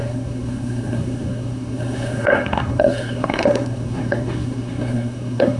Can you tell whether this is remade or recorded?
remade